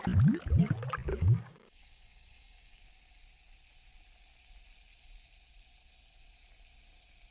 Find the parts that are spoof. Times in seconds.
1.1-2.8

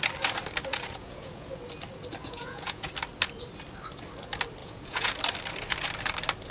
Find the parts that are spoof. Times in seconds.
0.7-1.5; 2.2-2.9; 4.6-5.1